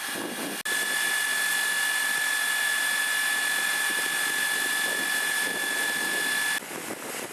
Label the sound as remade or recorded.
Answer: recorded